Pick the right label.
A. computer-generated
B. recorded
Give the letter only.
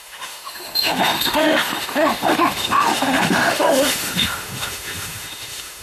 A